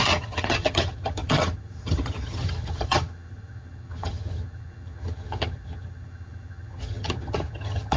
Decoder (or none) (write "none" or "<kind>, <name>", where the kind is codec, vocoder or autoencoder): vocoder, HiFi-GAN